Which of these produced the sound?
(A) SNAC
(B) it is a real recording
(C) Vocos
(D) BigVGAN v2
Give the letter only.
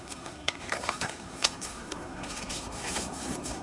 A